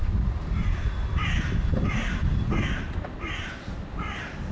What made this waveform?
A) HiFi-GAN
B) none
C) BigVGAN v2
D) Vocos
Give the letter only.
B